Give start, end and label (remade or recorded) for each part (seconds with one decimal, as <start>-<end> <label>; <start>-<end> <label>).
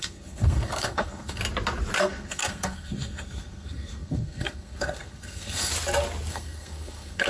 0.0-1.4 remade; 1.4-2.0 recorded; 2.0-5.7 remade; 5.7-6.3 recorded; 6.3-7.3 remade